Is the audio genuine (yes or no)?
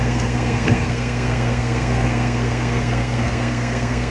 no